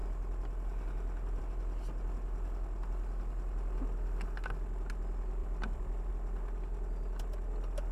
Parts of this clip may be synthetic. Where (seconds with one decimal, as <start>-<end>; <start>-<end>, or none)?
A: 5.4-6.1